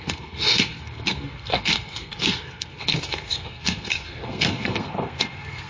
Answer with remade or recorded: remade